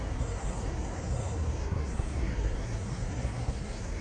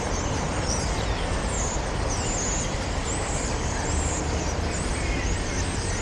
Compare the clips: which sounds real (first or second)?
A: second